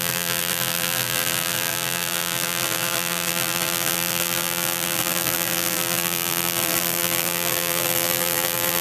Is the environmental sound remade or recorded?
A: remade